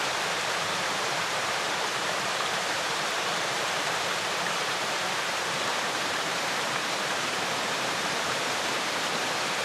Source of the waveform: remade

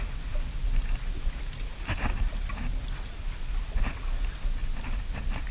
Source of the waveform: recorded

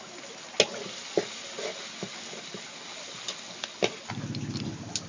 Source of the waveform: recorded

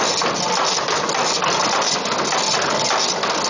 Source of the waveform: recorded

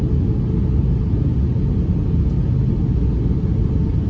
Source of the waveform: recorded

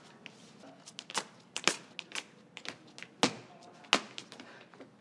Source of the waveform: recorded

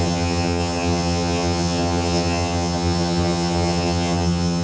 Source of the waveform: remade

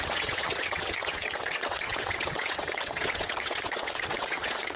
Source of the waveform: remade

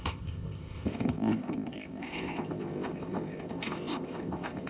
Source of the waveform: remade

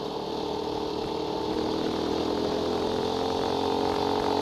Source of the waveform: recorded